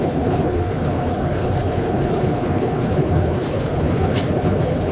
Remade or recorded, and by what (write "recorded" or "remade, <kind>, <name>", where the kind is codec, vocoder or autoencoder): remade, codec, HILCodec